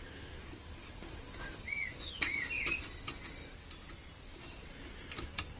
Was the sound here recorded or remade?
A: recorded